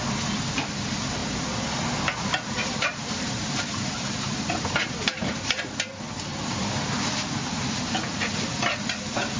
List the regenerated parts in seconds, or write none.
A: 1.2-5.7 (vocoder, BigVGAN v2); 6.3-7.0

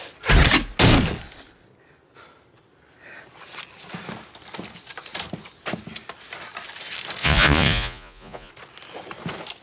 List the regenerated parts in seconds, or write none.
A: 7.2-8.5 (vocoder, Vocos)